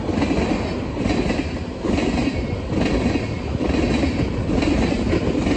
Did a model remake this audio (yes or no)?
no